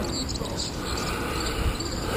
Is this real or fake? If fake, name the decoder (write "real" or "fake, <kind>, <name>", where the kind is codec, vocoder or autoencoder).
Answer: real